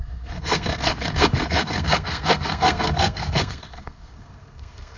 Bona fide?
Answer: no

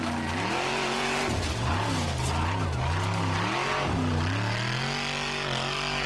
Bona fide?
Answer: yes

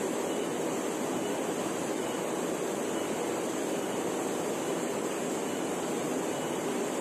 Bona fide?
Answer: yes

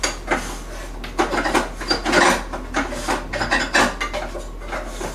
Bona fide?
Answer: yes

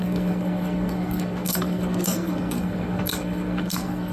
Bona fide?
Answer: no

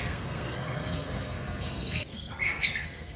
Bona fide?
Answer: no